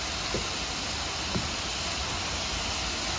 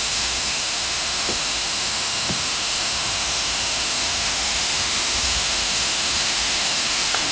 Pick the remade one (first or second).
second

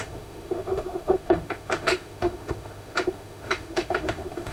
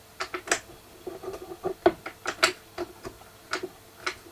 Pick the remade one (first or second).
first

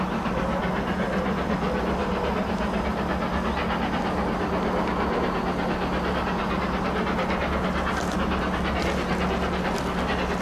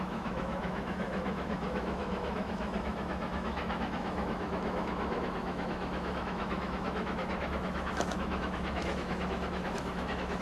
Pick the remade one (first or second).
second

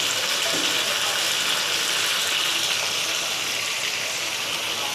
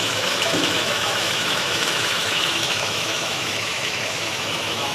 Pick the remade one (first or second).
second